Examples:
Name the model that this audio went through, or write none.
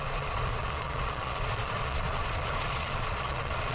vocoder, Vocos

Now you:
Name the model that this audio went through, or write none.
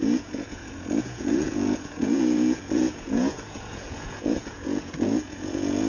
vocoder, Vocos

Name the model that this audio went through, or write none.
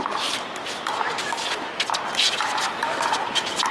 none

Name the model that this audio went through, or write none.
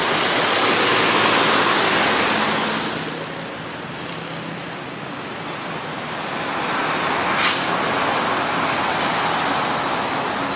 none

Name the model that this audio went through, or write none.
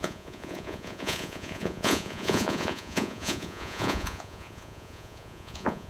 vocoder, Vocos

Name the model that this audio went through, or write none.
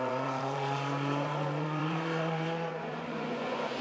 vocoder, Vocos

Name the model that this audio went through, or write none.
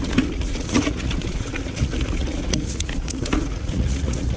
vocoder, Vocos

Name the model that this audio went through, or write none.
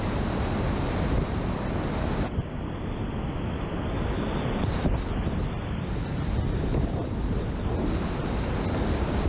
none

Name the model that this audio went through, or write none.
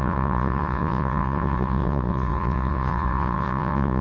vocoder, Vocos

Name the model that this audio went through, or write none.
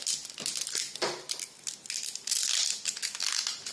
none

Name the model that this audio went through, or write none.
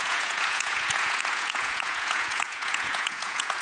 vocoder, Vocos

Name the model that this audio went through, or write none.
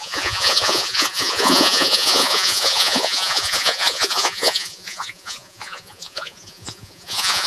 vocoder, Vocos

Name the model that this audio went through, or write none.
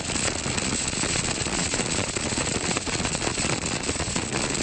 vocoder, Vocos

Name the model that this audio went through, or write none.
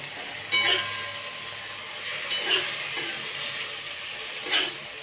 none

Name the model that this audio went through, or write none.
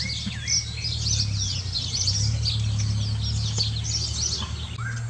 none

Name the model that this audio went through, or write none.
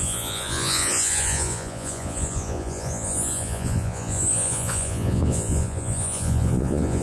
vocoder, Vocos